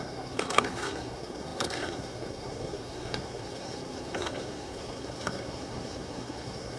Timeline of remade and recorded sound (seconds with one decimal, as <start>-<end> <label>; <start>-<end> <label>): 0.0-6.8 remade